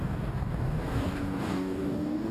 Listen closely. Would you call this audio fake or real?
fake